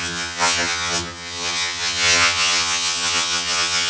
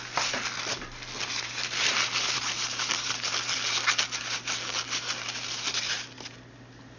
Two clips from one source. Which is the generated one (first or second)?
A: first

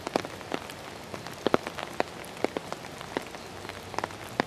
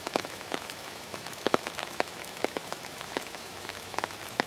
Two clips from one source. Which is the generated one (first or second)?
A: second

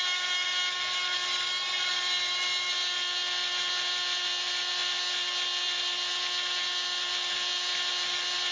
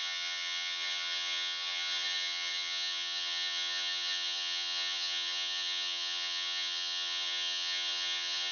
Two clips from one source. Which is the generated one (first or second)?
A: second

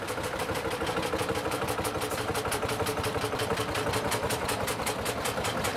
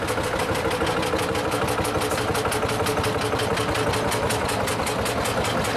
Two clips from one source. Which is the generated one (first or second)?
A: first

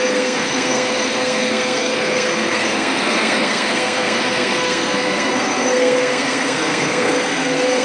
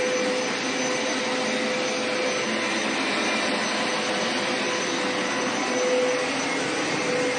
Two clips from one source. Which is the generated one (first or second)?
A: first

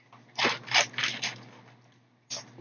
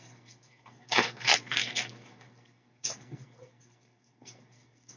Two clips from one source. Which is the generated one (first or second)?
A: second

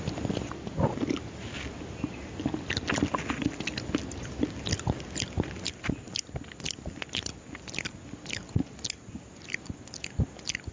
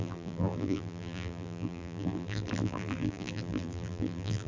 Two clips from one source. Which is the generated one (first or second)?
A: second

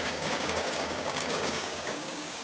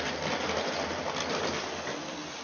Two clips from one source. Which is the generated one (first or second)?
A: first